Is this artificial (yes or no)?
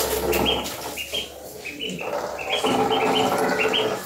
no